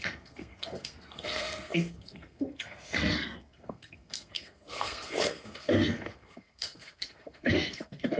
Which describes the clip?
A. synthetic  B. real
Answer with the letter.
A